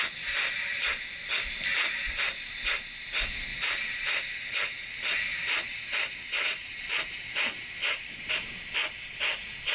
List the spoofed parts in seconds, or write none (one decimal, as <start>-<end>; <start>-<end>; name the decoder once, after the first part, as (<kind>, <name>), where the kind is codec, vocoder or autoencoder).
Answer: 3.5-8.3 (vocoder, BigVGAN v2)